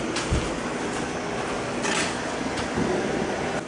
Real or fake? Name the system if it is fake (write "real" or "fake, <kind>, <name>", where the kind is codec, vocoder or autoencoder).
real